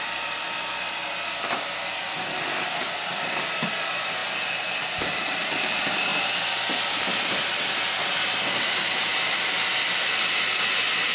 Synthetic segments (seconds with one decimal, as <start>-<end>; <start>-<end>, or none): 4.2-4.8; 6.1-9.7